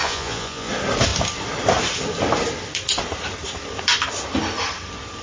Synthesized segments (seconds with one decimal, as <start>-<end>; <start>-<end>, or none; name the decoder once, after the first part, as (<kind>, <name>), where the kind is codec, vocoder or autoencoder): 0.0-0.7 (vocoder, Vocos)